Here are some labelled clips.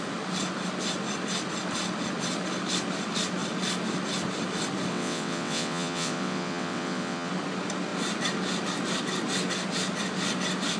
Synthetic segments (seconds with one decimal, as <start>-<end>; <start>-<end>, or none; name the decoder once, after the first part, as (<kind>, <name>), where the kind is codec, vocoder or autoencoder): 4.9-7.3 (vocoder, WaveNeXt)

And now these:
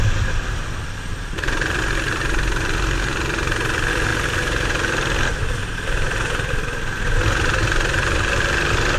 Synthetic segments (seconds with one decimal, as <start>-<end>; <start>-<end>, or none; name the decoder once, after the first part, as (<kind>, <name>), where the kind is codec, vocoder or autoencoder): 1.1-1.8 (vocoder, BigVGAN v2)

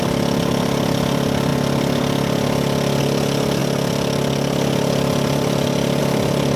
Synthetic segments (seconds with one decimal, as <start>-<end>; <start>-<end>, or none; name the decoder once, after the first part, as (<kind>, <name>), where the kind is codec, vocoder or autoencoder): none

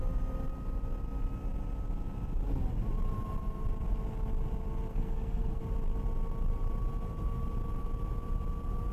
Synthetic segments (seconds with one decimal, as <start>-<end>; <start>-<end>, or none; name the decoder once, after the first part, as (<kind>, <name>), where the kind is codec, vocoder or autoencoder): 4.9-5.6 (codec, SNAC)

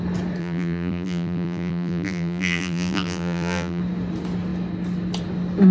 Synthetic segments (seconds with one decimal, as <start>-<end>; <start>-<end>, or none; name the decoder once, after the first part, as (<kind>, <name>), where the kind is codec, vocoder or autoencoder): 0.4-3.8 (vocoder, BigVGAN v2)